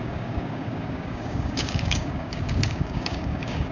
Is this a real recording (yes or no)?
no